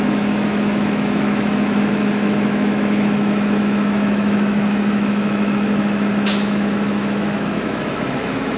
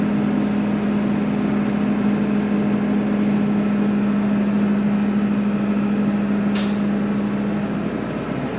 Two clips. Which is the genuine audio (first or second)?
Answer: second